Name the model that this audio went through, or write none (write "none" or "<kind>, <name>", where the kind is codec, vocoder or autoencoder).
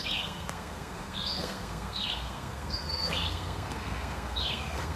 codec, SNAC